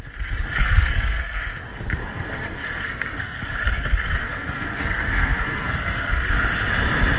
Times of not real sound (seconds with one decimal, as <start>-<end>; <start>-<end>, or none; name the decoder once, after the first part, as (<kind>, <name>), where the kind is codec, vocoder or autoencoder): 0.6-1.4 (codec, SNAC); 2.0-6.3

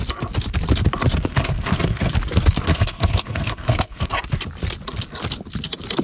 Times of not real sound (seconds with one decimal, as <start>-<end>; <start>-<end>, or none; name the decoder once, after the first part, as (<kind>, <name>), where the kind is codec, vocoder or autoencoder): 1.3-2.1 (codec, SNAC); 2.7-4.1

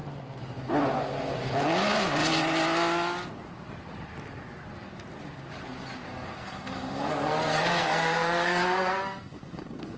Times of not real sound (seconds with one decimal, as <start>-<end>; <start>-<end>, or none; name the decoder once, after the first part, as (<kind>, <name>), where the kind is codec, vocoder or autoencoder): 6.1-10.0 (codec, SNAC)

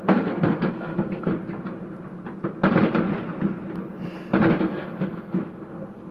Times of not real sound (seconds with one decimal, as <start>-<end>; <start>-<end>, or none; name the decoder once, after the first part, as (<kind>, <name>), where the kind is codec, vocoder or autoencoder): 0.0-1.3 (codec, SNAC); 4.6-6.1